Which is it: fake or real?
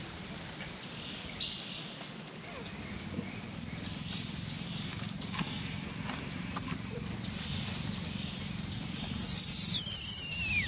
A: real